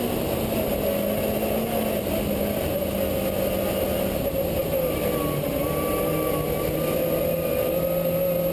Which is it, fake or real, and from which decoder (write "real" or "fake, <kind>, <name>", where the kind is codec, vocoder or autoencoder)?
real